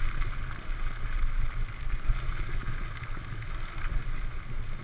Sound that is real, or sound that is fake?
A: real